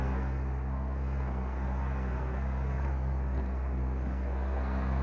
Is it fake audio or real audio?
fake